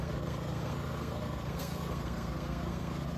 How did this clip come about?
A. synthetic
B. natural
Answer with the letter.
A